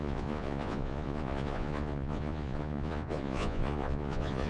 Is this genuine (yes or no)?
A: no